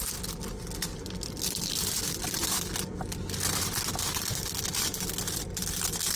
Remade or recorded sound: recorded